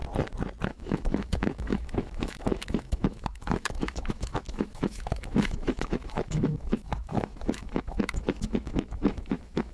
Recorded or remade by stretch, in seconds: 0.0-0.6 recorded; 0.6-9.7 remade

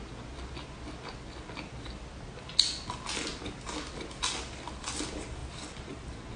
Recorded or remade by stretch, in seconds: 0.0-6.4 recorded